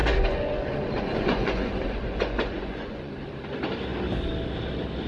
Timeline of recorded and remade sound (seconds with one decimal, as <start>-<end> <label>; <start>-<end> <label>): 0.0-3.1 remade; 3.1-5.1 recorded